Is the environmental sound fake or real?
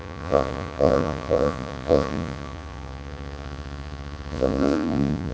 fake